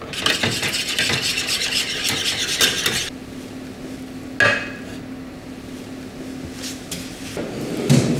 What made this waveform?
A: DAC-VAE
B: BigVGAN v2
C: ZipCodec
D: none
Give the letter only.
D